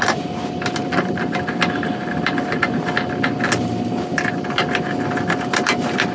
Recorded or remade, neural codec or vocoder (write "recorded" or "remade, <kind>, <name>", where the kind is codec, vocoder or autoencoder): recorded